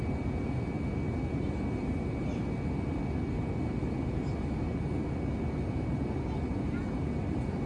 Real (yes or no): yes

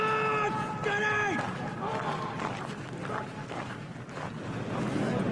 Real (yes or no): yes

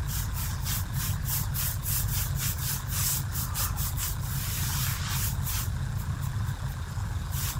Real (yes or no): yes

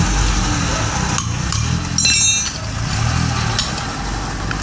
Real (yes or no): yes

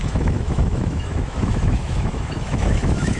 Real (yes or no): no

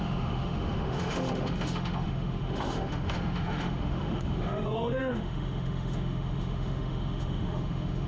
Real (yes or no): no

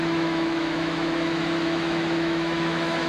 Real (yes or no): no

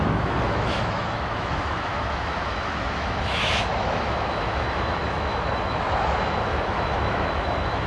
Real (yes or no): no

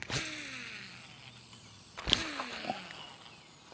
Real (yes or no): yes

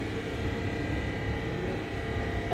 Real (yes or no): yes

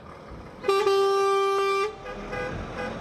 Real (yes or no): yes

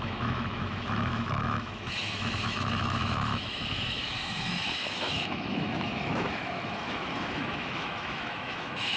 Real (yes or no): no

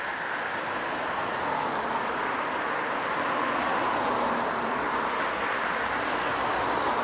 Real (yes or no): yes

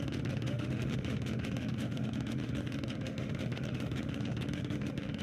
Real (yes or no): no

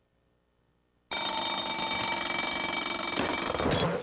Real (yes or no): yes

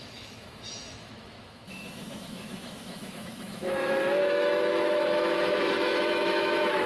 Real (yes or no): no